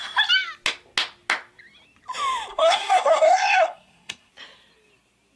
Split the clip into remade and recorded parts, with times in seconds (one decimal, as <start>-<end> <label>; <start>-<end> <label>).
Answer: 0.0-2.5 recorded; 2.5-4.3 remade; 4.3-5.4 recorded